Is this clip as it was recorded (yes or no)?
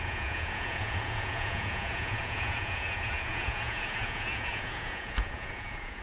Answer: no